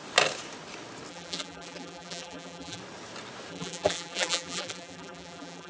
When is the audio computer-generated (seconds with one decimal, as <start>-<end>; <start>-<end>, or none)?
1.1-2.8; 3.5-5.7